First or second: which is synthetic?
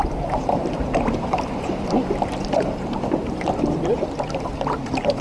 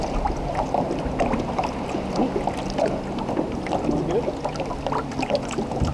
first